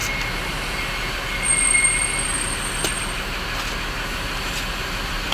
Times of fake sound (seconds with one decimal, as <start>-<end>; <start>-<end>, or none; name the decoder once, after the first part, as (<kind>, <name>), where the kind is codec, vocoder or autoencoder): none